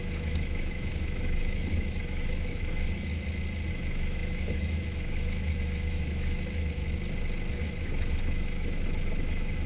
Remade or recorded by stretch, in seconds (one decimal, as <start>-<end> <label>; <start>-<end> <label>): 0.0-3.1 remade; 3.1-3.7 recorded; 3.7-6.8 remade; 6.8-7.5 recorded; 7.5-9.7 remade